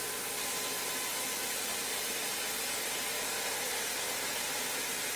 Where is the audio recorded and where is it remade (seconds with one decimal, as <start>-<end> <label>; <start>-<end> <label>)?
0.0-1.1 recorded; 1.1-1.7 remade; 1.7-5.2 recorded